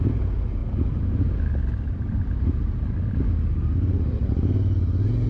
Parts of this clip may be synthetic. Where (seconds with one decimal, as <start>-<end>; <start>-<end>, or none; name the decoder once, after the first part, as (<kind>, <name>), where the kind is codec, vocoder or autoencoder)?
none